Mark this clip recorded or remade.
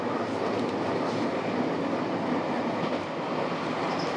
recorded